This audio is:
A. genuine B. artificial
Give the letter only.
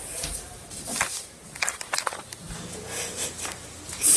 A